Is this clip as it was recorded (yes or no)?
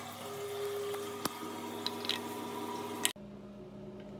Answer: yes